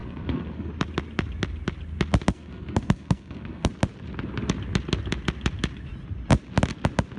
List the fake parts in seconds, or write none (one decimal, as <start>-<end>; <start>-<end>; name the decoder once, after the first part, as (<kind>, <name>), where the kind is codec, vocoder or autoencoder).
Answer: 0.0-0.7 (codec, SNAC); 2.3-3.7